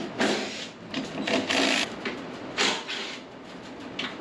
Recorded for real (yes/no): yes